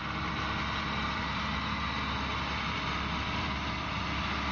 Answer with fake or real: real